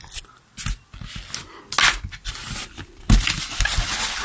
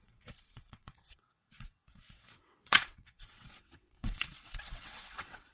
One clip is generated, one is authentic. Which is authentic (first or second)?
first